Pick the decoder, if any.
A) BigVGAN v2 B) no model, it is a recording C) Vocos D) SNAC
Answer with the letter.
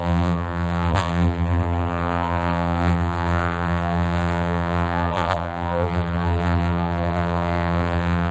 A